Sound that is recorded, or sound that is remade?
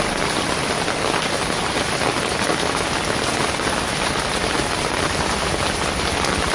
recorded